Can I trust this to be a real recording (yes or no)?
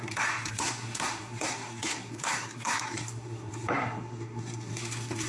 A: no